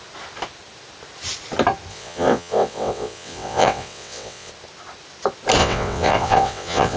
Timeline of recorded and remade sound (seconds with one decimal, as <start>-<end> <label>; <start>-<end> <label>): 0.0-1.9 recorded; 1.9-4.5 remade; 4.5-5.6 recorded; 5.6-7.0 remade